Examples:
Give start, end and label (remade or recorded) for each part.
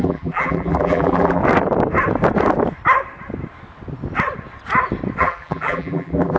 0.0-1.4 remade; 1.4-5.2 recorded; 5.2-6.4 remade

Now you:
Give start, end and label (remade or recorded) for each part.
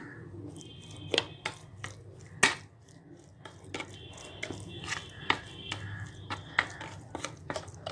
0.0-7.9 recorded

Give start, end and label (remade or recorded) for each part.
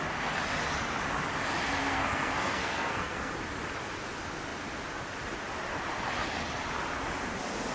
0.0-1.8 recorded; 1.8-3.3 remade; 3.3-7.7 recorded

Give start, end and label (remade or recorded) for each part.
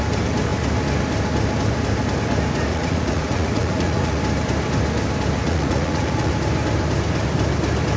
0.0-2.7 recorded; 2.7-4.2 remade; 4.2-5.4 recorded; 5.4-6.3 remade; 6.3-8.0 recorded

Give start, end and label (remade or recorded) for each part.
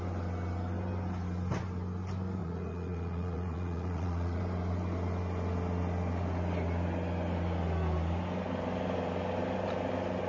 0.0-2.4 recorded; 2.4-4.4 remade; 4.4-10.3 recorded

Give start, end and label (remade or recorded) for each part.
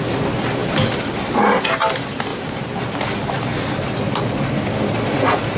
0.0-2.3 recorded; 2.3-3.0 remade; 3.0-5.6 recorded